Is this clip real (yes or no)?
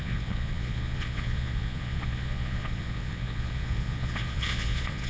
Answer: no